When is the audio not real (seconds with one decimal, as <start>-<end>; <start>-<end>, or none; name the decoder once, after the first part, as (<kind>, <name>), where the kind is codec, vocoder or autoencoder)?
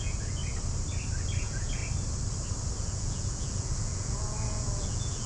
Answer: 0.0-0.4 (vocoder, Vocos); 1.4-1.8; 2.8-5.3